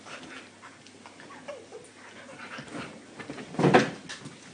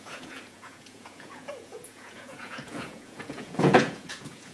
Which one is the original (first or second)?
first